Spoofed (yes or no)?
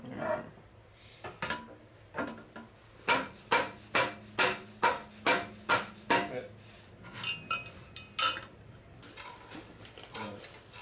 no